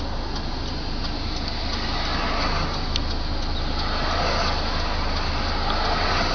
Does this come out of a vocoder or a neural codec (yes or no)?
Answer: no